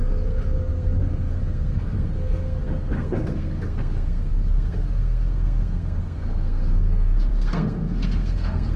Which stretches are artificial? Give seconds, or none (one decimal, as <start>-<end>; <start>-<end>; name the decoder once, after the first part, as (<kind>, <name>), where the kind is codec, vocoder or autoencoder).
0.0-8.8 (codec, SNAC)